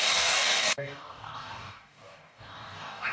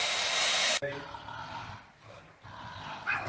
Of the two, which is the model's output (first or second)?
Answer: first